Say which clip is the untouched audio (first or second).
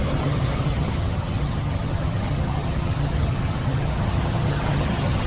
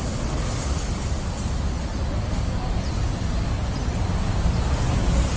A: second